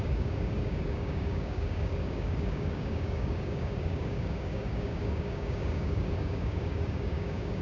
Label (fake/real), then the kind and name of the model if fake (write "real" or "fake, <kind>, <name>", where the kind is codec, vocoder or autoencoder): fake, codec, DAC